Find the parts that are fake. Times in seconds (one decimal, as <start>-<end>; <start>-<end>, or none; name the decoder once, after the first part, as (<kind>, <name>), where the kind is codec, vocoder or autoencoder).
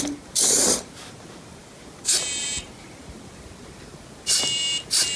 0.0-5.2 (vocoder, BigVGAN v2)